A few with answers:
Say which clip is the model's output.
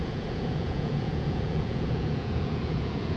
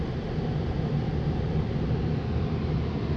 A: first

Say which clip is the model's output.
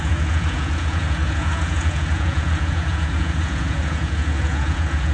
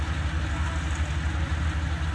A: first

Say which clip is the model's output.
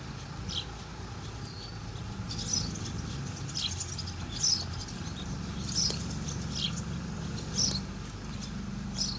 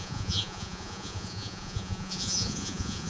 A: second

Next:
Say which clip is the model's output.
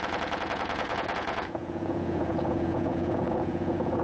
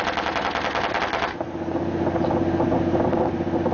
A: first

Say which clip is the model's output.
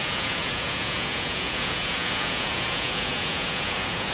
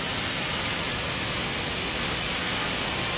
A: first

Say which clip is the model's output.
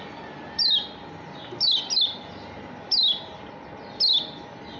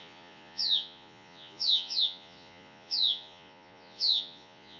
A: second